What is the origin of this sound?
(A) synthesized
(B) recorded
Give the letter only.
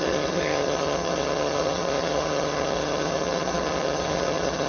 A